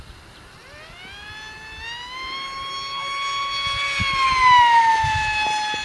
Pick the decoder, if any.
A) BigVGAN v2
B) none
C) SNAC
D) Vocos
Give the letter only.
B